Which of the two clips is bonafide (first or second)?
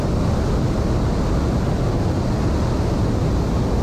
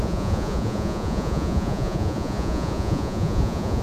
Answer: first